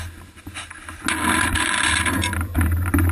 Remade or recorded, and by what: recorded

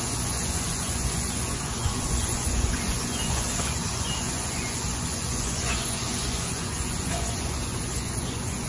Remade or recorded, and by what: remade, vocoder, Vocos